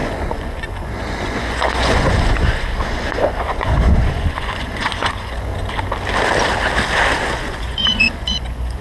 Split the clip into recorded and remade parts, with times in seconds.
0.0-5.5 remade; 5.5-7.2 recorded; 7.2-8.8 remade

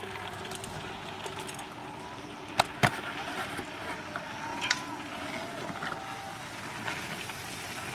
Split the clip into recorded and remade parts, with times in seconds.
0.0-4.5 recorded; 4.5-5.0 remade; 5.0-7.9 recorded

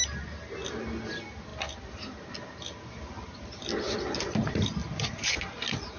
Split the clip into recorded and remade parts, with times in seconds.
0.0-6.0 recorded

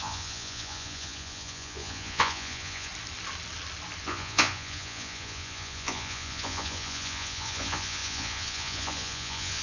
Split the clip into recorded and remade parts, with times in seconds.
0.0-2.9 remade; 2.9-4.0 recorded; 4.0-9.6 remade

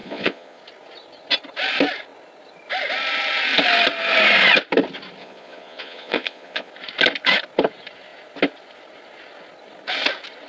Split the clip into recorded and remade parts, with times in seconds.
0.0-0.6 remade; 0.6-5.2 recorded; 5.2-6.7 remade; 6.7-10.5 recorded

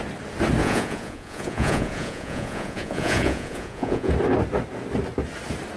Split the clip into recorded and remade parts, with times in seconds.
0.0-0.6 recorded; 0.6-4.1 remade; 4.1-5.8 recorded